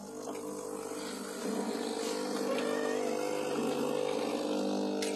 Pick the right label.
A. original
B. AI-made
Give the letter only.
A